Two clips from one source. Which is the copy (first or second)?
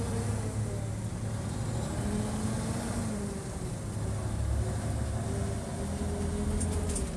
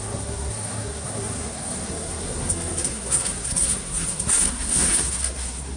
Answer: second